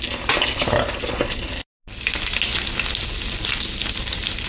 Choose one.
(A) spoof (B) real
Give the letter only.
B